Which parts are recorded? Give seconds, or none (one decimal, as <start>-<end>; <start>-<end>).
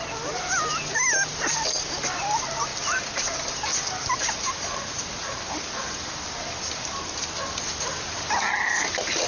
0.0-9.3